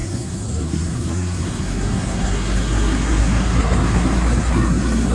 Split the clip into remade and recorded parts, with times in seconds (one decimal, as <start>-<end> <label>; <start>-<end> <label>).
0.0-5.1 remade

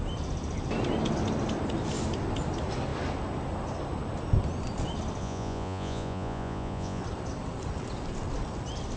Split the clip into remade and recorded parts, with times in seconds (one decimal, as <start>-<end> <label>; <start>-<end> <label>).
0.0-5.2 recorded; 5.2-7.0 remade; 7.0-9.0 recorded

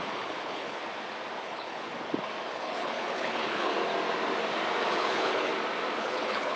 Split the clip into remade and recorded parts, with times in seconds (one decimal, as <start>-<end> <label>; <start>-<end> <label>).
0.0-0.8 remade; 0.8-1.4 recorded; 1.4-1.9 remade; 1.9-2.5 recorded; 2.5-3.7 remade; 3.7-4.9 recorded; 4.9-5.5 remade; 5.5-6.0 recorded; 6.0-6.6 remade

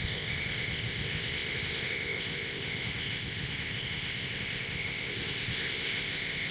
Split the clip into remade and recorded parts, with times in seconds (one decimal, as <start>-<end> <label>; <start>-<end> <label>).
0.0-6.5 remade

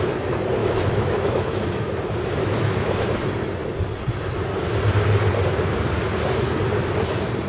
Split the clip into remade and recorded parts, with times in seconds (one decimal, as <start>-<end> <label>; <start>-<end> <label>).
0.0-0.6 recorded; 0.6-1.9 remade; 1.9-2.4 recorded; 2.4-3.0 remade; 3.0-7.5 recorded